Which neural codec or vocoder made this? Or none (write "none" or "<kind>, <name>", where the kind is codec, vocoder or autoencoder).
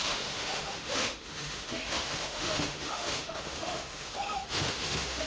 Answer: autoencoder, DAC-VAE